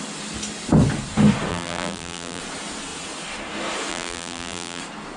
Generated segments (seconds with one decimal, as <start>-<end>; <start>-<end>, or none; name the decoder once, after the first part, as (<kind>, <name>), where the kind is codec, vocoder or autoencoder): 1.5-2.4 (vocoder, BigVGAN v2); 3.9-4.8